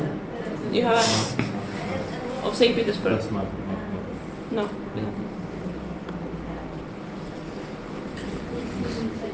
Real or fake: real